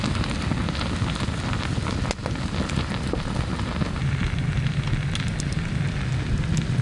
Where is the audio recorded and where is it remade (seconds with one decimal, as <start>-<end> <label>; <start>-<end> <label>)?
0.0-6.8 recorded